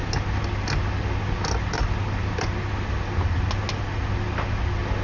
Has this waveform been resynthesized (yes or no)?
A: no